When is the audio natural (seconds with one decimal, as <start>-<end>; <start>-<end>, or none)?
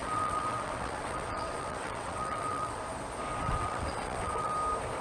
2.8-3.4; 4.5-5.0